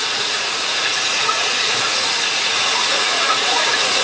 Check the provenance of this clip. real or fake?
fake